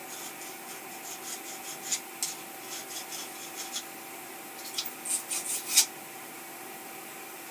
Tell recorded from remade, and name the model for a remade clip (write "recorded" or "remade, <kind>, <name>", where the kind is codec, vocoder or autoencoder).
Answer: recorded